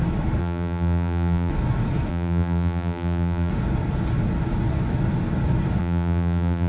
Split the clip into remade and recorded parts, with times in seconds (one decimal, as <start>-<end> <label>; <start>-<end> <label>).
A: 0.0-0.4 recorded; 0.4-1.5 remade; 1.5-2.1 recorded; 2.1-3.5 remade; 3.5-5.8 recorded; 5.8-6.7 remade